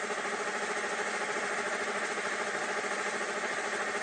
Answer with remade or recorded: recorded